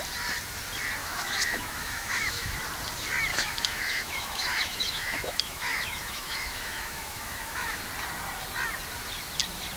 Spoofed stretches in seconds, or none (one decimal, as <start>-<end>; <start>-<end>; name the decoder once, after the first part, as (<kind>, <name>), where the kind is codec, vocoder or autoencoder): 1.0-2.5 (autoencoder, DAC-VAE); 3.3-7.8